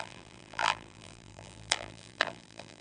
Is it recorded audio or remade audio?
remade